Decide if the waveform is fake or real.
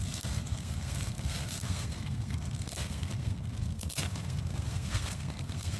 fake